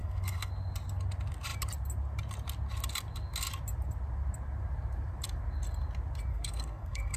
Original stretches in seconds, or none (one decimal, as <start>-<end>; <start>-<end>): 0.5-6.3